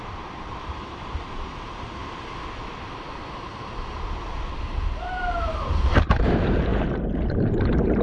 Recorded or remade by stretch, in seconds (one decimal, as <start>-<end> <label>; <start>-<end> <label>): 0.0-2.0 remade; 2.0-4.5 recorded; 4.5-6.7 remade; 6.7-7.3 recorded; 7.3-8.0 remade